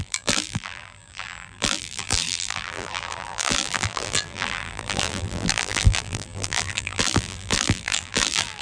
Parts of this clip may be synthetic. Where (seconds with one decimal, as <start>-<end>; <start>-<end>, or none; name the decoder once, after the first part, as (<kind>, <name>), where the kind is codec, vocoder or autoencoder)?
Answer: 0.0-8.6 (vocoder, BigVGAN v2)